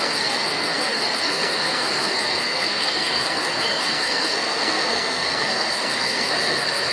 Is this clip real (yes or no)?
no